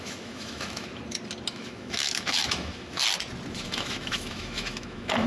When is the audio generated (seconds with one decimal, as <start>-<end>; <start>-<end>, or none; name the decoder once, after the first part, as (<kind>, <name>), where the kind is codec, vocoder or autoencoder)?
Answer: 0.0-0.9 (autoencoder, DAC-VAE); 1.5-3.0; 3.6-5.3